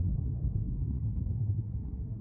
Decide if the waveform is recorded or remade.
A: remade